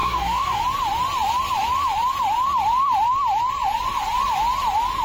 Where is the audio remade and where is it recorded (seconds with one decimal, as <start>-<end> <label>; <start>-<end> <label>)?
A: 0.0-0.6 remade; 0.6-5.0 recorded